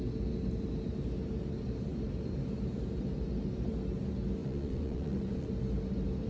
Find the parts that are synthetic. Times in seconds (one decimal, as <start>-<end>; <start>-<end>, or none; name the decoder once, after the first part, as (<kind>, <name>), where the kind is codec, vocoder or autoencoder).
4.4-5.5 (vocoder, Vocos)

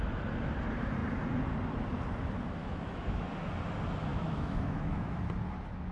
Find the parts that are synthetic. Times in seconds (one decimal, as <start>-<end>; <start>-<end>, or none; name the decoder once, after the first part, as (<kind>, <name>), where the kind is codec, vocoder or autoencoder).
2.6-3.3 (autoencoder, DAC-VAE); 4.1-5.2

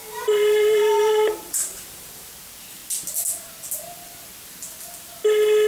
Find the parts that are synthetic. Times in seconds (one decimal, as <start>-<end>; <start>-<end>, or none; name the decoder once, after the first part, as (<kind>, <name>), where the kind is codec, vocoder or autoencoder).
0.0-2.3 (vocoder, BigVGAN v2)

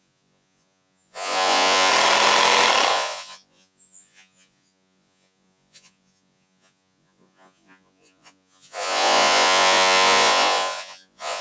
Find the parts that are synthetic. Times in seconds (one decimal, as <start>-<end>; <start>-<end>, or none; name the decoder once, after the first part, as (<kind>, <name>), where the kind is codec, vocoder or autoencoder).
0.0-1.9 (vocoder, Vocos); 2.9-11.4